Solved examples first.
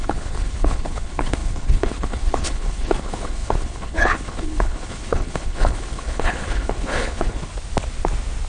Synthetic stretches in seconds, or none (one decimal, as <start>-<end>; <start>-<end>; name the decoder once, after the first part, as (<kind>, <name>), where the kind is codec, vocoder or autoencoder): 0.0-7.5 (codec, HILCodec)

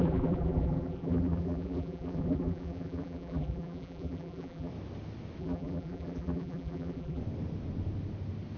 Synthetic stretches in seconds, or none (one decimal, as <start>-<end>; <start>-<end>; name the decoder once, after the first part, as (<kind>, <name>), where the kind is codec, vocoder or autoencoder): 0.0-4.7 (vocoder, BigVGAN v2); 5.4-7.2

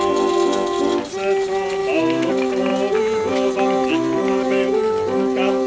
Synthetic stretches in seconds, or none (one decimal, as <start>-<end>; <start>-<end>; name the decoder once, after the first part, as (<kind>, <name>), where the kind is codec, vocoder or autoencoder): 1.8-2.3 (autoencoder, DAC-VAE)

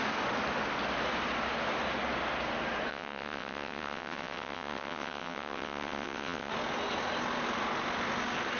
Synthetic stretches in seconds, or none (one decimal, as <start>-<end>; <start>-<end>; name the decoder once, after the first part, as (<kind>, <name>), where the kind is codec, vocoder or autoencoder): 2.9-6.5 (vocoder, WaveNeXt)